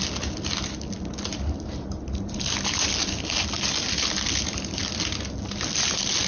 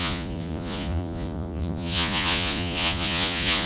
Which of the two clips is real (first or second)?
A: first